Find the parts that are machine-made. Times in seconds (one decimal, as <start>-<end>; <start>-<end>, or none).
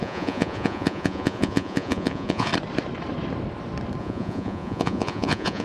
0.0-2.5; 4.0-5.6